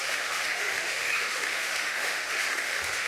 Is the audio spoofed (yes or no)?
yes